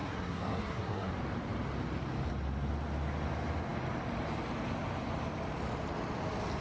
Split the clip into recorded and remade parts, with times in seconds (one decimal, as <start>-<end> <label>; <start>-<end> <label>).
0.0-1.1 remade; 1.1-6.6 recorded